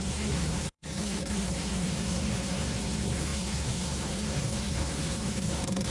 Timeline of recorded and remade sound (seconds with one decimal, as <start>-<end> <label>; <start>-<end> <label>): 0.0-5.9 remade